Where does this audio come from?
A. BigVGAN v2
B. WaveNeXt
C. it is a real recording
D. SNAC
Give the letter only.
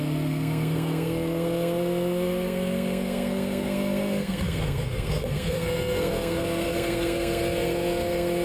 D